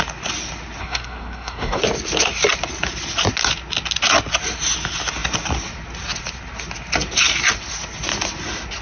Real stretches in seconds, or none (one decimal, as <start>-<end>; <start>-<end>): 0.0-0.8; 1.8-8.8